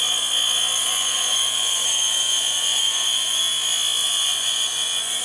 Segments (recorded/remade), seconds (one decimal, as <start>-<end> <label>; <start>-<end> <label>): 0.0-0.8 recorded; 0.8-3.4 remade; 3.4-4.0 recorded; 4.0-5.2 remade